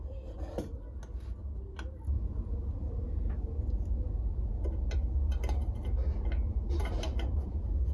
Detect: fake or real real